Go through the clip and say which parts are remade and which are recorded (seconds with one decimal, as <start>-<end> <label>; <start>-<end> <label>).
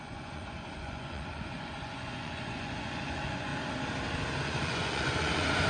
0.0-3.5 remade; 3.5-4.4 recorded; 4.4-5.7 remade